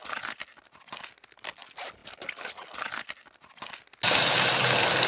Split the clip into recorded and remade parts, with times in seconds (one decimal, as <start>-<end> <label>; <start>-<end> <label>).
0.0-5.1 recorded